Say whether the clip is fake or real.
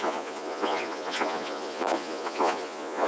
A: fake